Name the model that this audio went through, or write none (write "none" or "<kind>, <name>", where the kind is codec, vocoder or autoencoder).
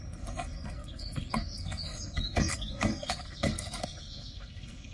codec, SNAC